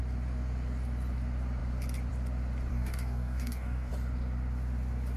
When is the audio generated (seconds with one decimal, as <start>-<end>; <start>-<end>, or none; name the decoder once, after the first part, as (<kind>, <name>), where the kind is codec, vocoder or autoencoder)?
2.7-3.9 (codec, DAC)